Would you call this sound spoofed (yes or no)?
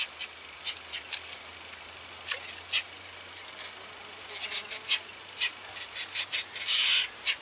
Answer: no